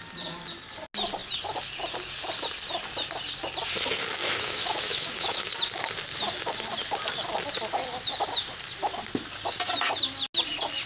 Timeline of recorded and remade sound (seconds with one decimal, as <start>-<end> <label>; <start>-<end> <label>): 0.0-4.2 recorded; 4.2-5.5 remade; 5.5-10.9 recorded